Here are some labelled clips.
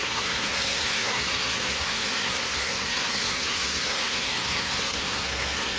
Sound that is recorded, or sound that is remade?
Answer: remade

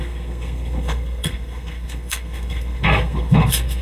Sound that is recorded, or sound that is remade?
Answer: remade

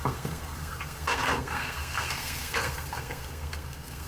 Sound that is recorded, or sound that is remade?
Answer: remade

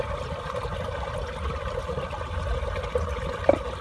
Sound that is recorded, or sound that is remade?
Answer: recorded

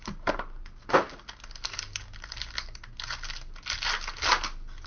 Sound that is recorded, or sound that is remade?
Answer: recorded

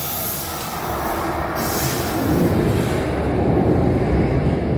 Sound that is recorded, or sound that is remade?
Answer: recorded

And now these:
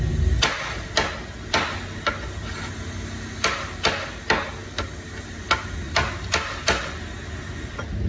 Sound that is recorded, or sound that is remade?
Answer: recorded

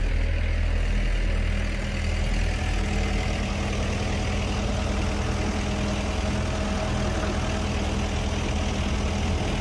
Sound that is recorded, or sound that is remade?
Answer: recorded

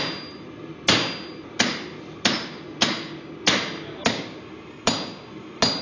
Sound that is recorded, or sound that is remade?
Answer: recorded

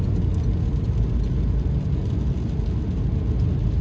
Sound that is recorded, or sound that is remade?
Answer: recorded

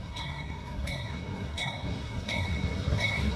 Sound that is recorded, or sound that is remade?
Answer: remade